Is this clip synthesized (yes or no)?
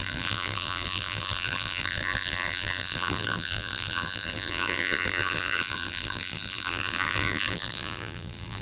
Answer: yes